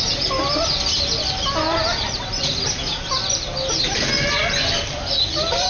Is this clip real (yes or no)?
yes